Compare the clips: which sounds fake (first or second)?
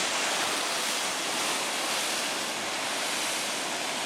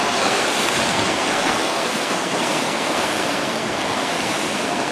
second